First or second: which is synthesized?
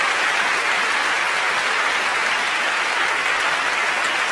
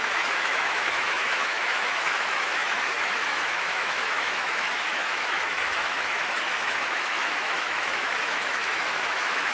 second